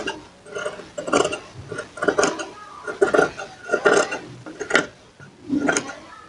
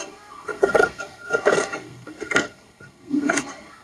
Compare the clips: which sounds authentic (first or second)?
first